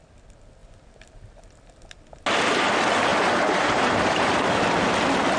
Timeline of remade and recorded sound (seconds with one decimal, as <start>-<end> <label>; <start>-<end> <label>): 0.0-3.1 recorded; 3.1-4.8 remade; 4.8-5.4 recorded